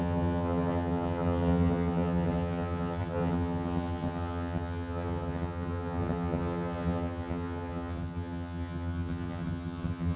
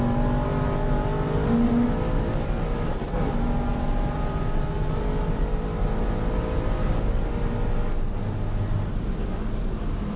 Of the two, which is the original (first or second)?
second